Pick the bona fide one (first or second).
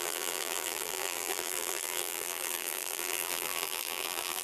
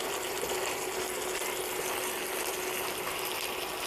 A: second